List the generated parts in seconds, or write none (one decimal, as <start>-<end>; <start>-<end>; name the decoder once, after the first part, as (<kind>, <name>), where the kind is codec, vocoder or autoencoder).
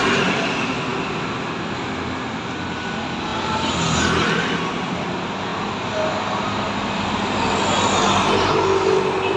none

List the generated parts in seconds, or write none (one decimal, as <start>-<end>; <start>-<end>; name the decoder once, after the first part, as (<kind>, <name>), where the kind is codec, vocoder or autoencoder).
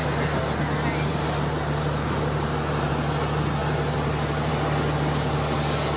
1.1-2.9 (vocoder, BigVGAN v2); 3.6-4.5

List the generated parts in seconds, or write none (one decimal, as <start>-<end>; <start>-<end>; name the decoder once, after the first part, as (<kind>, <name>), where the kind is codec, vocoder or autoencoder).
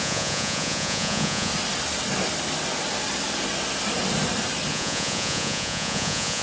0.0-1.5 (vocoder, Vocos); 4.7-6.4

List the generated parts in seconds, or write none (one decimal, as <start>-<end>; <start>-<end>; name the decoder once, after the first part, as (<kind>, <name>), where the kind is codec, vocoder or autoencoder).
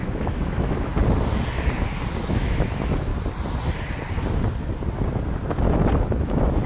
0.0-0.9 (autoencoder, DAC-VAE); 2.3-3.1; 6.2-6.7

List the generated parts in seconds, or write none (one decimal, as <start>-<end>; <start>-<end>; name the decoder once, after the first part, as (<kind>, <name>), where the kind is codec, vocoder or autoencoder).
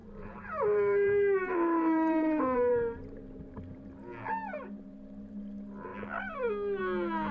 0.0-3.9 (vocoder, BigVGAN v2)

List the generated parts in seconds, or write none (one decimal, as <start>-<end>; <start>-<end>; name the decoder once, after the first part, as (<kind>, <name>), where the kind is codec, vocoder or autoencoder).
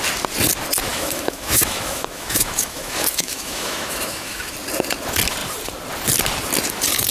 0.9-4.5 (autoencoder, DAC-VAE)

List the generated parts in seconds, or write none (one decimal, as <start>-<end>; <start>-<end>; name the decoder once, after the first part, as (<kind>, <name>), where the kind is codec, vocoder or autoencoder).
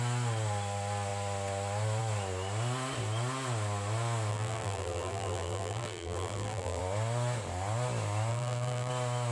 4.3-6.8 (vocoder, BigVGAN v2); 8.3-8.9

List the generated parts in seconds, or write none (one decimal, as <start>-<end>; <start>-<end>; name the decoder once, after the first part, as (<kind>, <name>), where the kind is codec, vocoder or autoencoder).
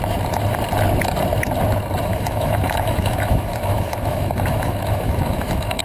2.1-5.8 (autoencoder, DAC-VAE)